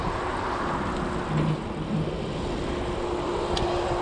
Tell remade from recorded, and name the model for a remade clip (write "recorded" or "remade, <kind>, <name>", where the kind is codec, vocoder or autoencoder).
recorded